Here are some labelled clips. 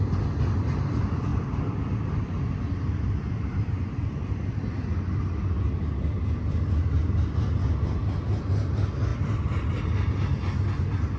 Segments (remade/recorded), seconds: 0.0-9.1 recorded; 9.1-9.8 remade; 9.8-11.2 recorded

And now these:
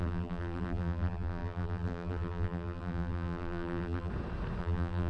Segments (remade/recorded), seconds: 0.0-4.1 remade; 4.1-4.6 recorded; 4.6-5.1 remade

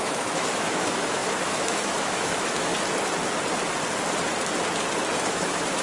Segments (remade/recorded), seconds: 0.0-2.7 remade; 2.7-5.2 recorded; 5.2-5.8 remade

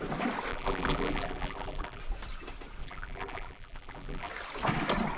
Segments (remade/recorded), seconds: 0.0-0.5 recorded; 0.5-2.0 remade; 2.0-2.8 recorded; 2.8-4.3 remade; 4.3-5.2 recorded

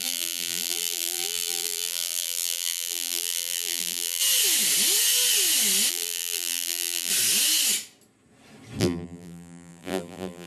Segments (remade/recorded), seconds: 0.0-4.2 remade; 4.2-5.9 recorded; 5.9-7.1 remade; 7.1-8.8 recorded; 8.8-10.5 remade

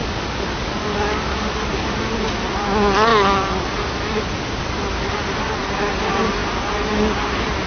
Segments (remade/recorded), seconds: 0.0-1.9 remade; 1.9-7.7 recorded

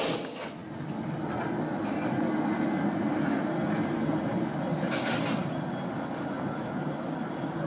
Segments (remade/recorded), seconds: 0.0-7.7 recorded

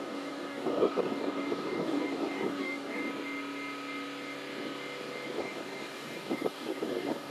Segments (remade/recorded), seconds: 0.0-3.0 remade; 3.0-5.4 recorded; 5.4-7.3 remade